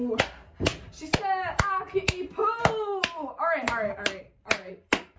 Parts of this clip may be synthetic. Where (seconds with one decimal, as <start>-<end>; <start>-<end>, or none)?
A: 0.0-0.7; 1.5-2.4; 4.2-5.2